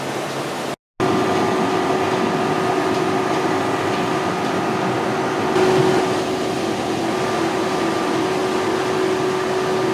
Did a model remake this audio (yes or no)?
no